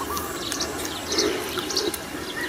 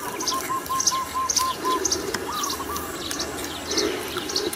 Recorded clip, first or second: second